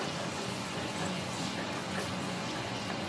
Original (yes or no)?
no